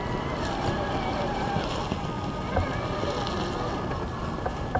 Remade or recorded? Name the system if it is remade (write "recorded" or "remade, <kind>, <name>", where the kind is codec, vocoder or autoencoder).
recorded